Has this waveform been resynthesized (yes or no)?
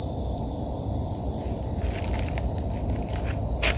no